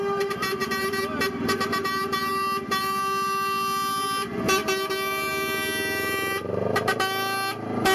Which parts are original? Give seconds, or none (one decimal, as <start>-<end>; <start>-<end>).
0.0-7.9